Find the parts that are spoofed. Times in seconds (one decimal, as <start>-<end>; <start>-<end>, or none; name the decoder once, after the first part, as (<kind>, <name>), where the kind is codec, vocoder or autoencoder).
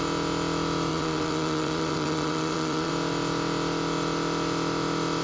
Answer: 0.9-2.9 (vocoder, WaveNeXt)